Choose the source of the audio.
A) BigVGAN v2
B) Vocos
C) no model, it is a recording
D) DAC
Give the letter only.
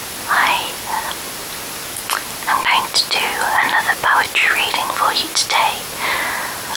C